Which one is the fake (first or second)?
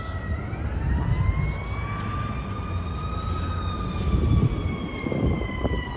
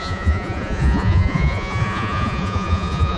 second